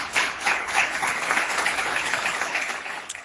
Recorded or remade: remade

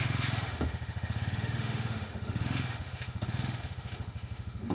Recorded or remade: remade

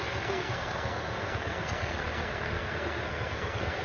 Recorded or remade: remade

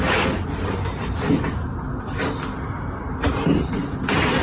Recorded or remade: recorded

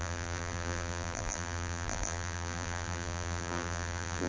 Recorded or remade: remade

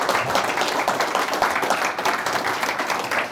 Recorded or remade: recorded